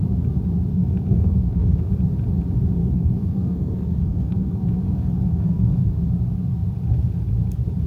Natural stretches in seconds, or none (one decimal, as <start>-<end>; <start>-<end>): 0.0-0.7; 1.9-2.8; 5.9-7.9